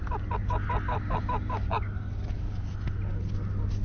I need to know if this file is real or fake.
real